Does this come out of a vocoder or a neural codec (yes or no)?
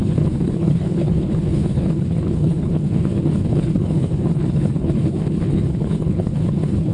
yes